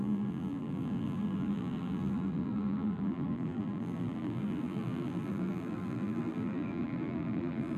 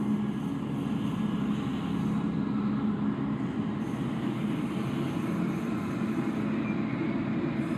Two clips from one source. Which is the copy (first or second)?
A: first